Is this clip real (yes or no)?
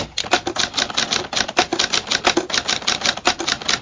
yes